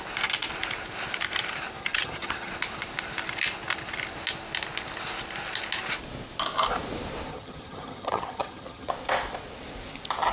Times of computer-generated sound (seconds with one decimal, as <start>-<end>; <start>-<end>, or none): 1.8-2.5; 7.3-8.9